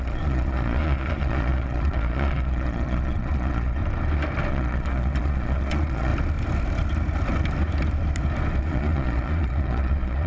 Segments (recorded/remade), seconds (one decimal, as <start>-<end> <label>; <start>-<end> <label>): 0.0-3.8 remade; 3.8-4.5 recorded; 4.5-6.1 remade; 6.1-8.6 recorded; 8.6-10.3 remade

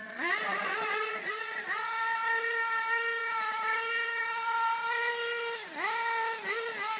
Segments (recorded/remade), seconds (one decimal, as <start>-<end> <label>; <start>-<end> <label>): 0.0-1.9 remade; 1.9-7.0 recorded